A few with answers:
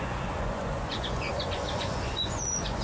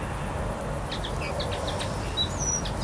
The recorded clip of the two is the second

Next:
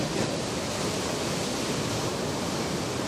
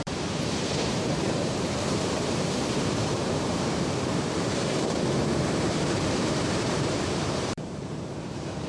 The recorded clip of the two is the first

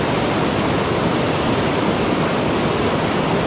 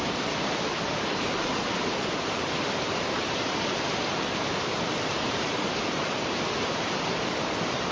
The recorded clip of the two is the first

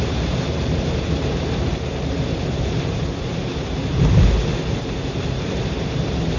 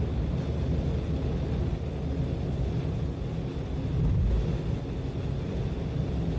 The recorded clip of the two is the second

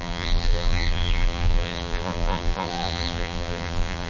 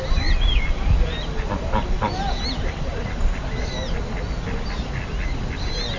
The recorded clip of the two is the second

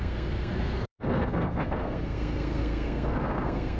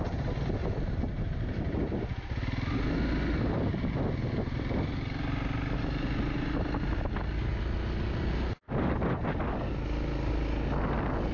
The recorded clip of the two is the second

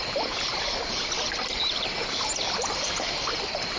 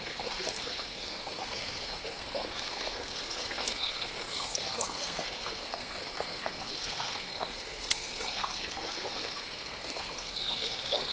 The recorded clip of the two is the first